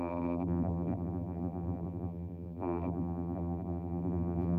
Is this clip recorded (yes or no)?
no